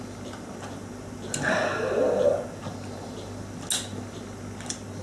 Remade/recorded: recorded